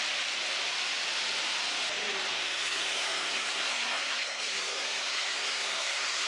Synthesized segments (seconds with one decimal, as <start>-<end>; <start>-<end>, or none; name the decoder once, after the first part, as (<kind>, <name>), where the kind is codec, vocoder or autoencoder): 2.3-6.3 (codec, SNAC)